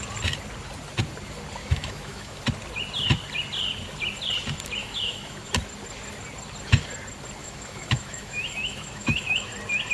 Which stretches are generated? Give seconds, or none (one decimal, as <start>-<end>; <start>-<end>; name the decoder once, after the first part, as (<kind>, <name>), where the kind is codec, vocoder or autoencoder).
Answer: 1.6-2.4 (autoencoder, DAC-VAE); 4.8-5.5; 7.4-9.5